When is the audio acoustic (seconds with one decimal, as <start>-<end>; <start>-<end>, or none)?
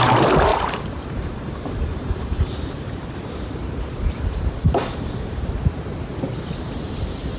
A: 0.0-0.5; 4.9-7.4